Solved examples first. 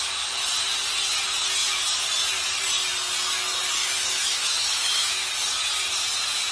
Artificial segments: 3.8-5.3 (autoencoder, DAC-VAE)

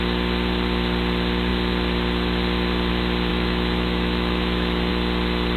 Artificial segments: 3.3-4.9 (autoencoder, DAC-VAE)

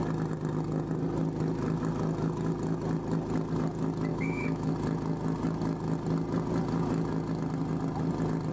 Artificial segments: 4.1-4.7 (autoencoder, DAC-VAE)

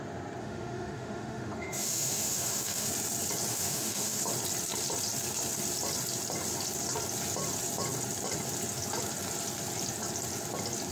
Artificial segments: 0.4-2.9 (autoencoder, DAC-VAE); 3.5-4.2

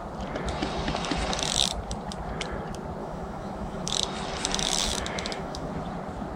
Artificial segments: 3.0-3.9 (autoencoder, DAC-VAE); 4.8-5.7